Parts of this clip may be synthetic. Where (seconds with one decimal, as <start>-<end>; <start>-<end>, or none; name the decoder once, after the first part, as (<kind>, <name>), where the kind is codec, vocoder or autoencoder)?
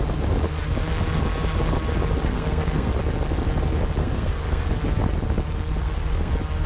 2.2-2.9 (codec, SNAC); 4.0-4.7; 5.8-6.3